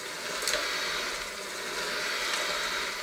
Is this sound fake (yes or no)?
yes